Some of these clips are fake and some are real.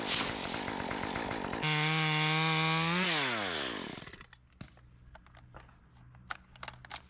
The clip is real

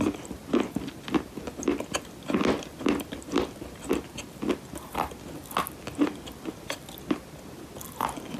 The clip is real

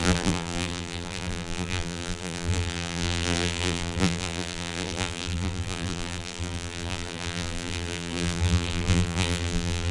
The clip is fake